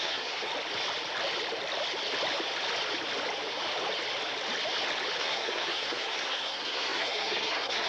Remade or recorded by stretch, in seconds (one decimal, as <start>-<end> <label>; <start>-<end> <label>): 0.0-0.5 remade; 0.5-5.2 recorded; 5.2-7.9 remade